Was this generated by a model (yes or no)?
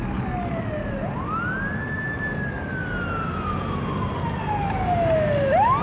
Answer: no